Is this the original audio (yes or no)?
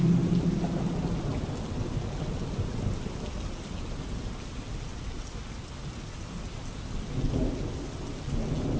yes